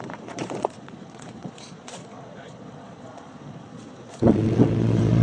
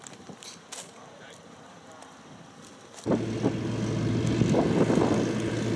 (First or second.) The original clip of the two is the second